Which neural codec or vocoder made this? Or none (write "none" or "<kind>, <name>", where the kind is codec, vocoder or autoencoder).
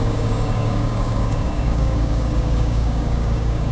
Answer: codec, DAC